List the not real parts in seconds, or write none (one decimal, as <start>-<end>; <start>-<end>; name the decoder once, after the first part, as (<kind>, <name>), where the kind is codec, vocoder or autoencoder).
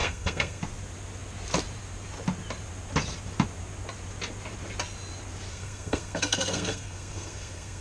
0.0-0.6 (codec, SNAC); 5.5-7.8